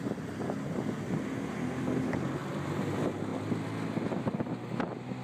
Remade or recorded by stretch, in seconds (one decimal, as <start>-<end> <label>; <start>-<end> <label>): 0.0-5.2 recorded

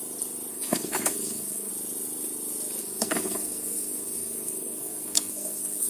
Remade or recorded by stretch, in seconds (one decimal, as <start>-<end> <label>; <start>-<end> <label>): 0.0-0.5 recorded; 0.5-1.7 remade; 1.7-2.8 recorded; 2.8-5.9 remade

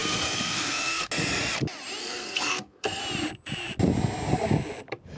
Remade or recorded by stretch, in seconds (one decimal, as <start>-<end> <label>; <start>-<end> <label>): 0.0-1.1 remade; 1.1-2.0 recorded; 2.0-3.0 remade; 3.0-5.2 recorded

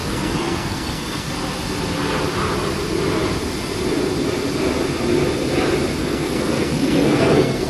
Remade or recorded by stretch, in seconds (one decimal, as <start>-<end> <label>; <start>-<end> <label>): 0.0-1.3 remade; 1.3-6.0 recorded; 6.0-7.7 remade

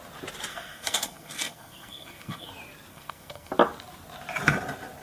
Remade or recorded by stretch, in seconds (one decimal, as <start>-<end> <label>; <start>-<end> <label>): 0.0-0.5 recorded; 0.5-2.5 remade; 2.5-2.9 recorded; 2.9-3.5 remade; 3.5-5.0 recorded

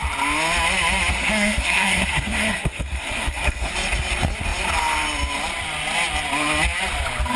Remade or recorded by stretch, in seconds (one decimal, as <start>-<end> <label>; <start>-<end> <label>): 0.0-1.1 recorded; 1.1-3.7 remade; 3.7-7.4 recorded

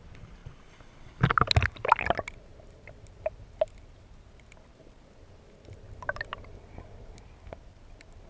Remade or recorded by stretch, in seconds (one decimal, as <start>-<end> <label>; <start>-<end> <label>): 0.0-8.3 recorded

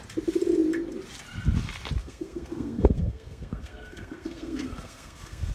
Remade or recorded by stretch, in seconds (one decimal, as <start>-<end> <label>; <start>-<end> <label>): 0.0-2.0 recorded; 2.0-5.5 remade